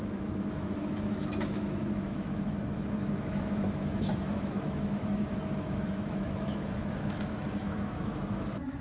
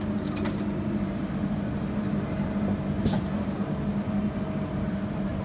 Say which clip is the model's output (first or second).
first